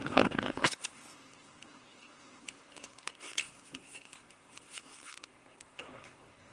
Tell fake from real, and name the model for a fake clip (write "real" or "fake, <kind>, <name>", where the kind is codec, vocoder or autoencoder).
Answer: fake, codec, SNAC